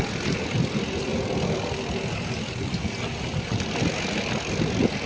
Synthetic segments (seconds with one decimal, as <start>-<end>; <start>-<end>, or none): none